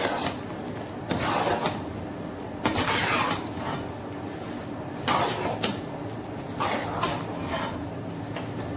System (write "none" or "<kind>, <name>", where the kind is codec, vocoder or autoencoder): none